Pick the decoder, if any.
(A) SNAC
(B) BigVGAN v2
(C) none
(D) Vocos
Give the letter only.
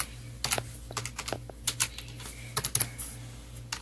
C